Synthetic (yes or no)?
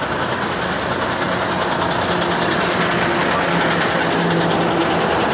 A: no